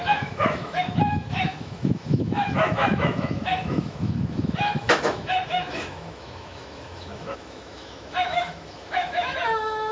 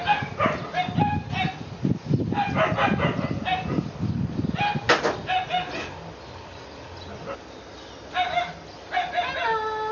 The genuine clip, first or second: second